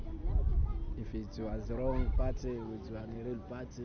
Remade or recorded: recorded